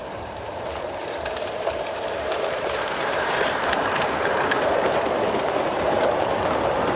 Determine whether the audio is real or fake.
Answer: fake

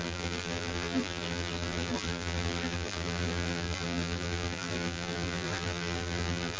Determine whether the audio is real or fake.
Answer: fake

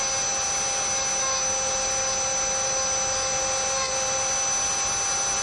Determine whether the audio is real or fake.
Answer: real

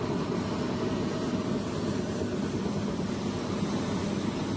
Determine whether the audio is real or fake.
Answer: real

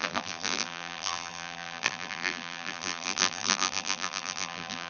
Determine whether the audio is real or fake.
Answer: fake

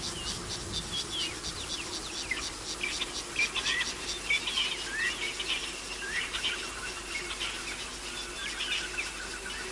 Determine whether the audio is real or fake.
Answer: real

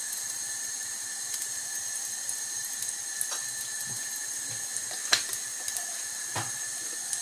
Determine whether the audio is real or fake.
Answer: real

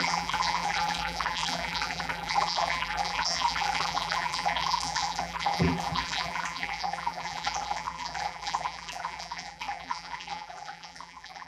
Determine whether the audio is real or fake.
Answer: fake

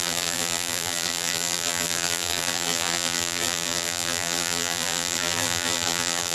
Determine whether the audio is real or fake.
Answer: fake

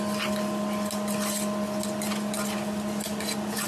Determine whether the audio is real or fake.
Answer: real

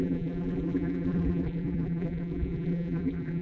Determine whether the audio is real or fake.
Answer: fake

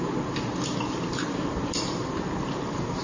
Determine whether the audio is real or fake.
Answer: fake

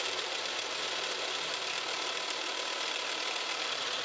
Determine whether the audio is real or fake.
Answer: fake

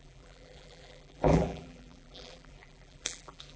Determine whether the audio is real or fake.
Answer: fake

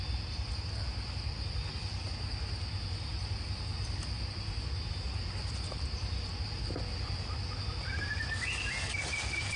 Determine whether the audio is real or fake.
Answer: real